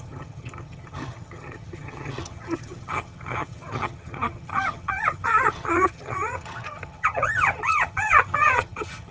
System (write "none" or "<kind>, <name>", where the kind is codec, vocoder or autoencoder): vocoder, HiFi-GAN